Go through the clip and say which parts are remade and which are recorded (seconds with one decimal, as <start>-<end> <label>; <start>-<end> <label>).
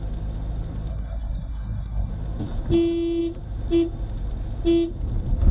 0.0-0.9 recorded; 0.9-2.1 remade; 2.1-5.5 recorded